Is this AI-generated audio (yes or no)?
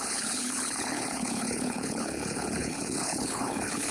yes